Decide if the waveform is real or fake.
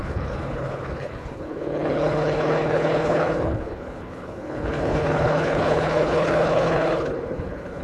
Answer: fake